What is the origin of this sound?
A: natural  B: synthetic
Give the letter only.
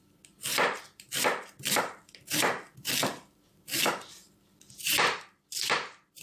B